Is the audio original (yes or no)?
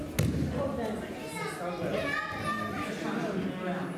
yes